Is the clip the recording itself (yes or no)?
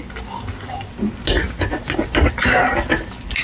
yes